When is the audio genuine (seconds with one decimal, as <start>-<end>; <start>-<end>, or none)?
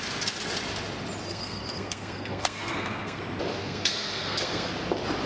0.0-1.3; 3.2-3.6; 4.7-5.3